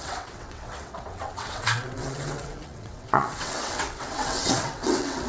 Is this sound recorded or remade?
remade